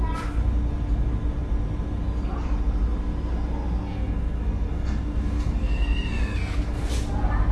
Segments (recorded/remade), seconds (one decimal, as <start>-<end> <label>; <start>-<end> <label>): 0.0-3.8 recorded; 3.8-6.9 remade; 6.9-7.5 recorded